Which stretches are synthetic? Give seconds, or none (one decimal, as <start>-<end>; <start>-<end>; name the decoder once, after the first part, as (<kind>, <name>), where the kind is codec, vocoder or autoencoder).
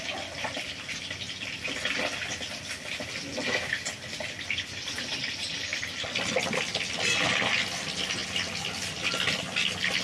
none